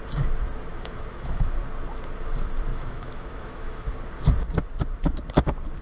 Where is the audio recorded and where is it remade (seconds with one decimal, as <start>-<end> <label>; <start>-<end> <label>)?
0.0-0.7 recorded; 0.7-1.5 remade; 1.5-2.7 recorded; 2.7-3.9 remade; 3.9-5.8 recorded